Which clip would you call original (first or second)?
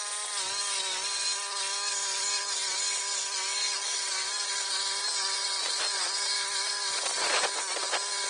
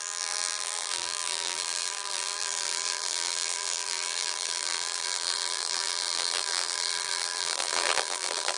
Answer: first